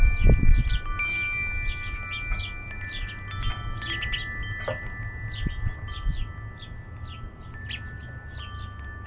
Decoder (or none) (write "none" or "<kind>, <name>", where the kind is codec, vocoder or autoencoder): none